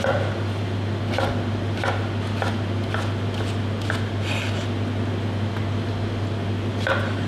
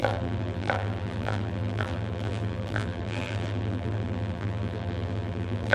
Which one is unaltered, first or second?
first